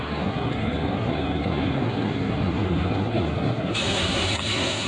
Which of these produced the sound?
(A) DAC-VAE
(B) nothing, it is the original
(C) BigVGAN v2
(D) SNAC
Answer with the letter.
D